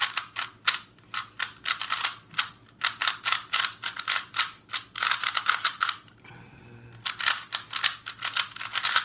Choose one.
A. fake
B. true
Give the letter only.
B